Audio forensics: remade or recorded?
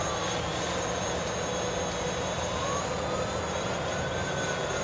recorded